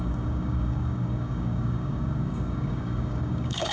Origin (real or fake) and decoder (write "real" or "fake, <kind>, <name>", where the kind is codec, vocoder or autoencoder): fake, codec, DAC